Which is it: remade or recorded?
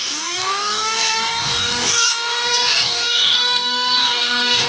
remade